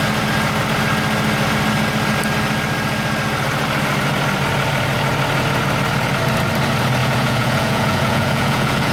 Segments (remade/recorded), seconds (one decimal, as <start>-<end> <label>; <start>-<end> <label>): 0.0-7.0 recorded; 7.0-8.9 remade